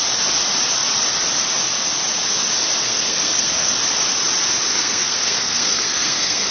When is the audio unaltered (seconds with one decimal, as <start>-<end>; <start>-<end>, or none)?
0.0-2.8; 3.7-4.7